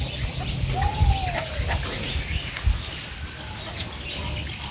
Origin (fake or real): real